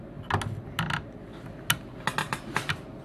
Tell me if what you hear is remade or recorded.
recorded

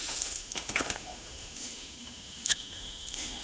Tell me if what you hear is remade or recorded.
remade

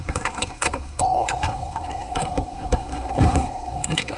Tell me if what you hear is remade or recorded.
remade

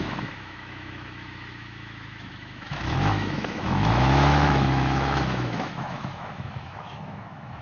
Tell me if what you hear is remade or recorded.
remade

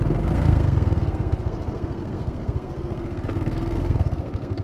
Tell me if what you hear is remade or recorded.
remade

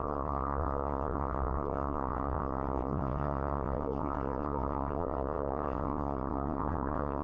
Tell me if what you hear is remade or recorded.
remade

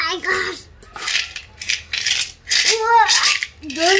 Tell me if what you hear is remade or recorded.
recorded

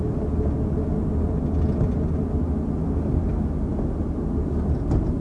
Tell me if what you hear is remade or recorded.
recorded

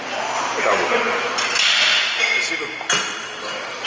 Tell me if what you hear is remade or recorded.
recorded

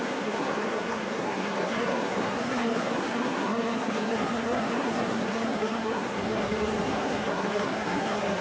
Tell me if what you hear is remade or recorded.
remade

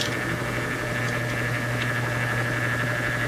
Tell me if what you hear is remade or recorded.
recorded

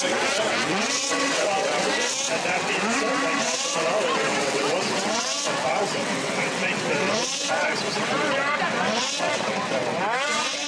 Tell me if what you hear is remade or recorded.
remade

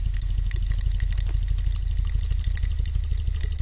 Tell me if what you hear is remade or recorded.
recorded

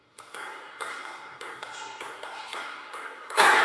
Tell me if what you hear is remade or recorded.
remade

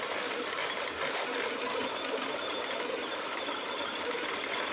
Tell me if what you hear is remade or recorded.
recorded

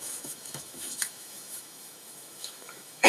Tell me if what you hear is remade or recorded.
remade